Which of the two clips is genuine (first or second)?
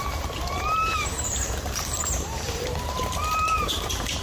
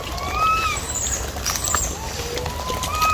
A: second